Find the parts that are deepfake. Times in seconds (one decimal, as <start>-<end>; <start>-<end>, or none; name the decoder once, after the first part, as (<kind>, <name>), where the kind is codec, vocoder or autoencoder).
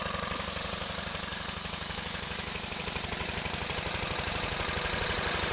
1.3-2.8 (autoencoder, DAC-VAE)